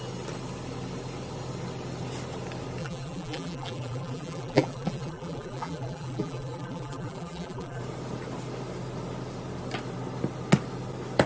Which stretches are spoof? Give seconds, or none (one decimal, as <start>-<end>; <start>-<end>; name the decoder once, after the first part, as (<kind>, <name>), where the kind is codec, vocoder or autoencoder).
2.8-7.8 (vocoder, BigVGAN v2)